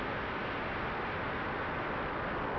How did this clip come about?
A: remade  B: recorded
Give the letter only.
B